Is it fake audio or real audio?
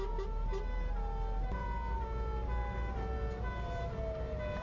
real